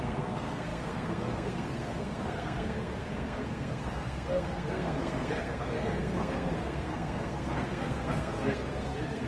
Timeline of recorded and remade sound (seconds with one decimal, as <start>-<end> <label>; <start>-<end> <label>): 0.0-9.3 remade